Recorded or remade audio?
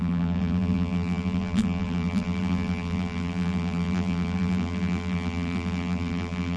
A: remade